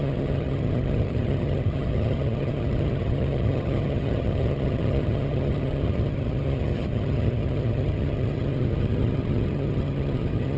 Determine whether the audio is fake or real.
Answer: fake